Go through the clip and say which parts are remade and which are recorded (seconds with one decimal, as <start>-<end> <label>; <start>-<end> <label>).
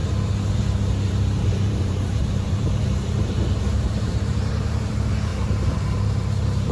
0.0-1.1 recorded; 1.1-5.3 remade; 5.3-6.2 recorded; 6.2-6.7 remade